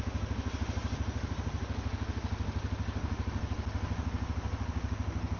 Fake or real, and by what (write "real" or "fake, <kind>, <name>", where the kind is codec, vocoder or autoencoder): real